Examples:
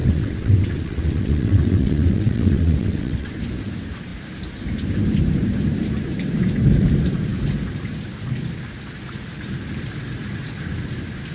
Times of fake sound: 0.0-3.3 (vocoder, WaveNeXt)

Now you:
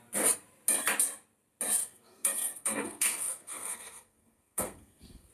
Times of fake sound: 1.8-5.3 (codec, SNAC)

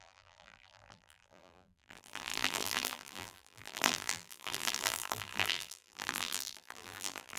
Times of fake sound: 0.0-7.4 (vocoder, BigVGAN v2)

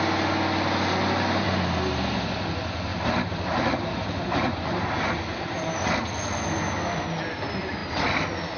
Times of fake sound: 2.9-5.9 (vocoder, BigVGAN v2)

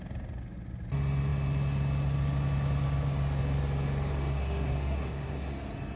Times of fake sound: 4.3-5.5 (codec, SNAC)

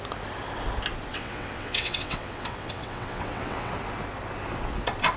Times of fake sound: 1.1-3.7 (vocoder, WaveNeXt)